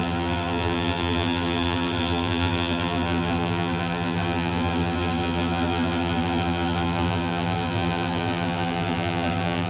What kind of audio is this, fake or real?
fake